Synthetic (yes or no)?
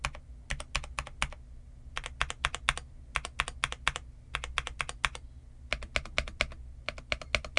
no